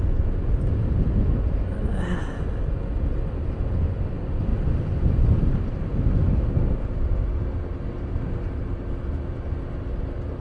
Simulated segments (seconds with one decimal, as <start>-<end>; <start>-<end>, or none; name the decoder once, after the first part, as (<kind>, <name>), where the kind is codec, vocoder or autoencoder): none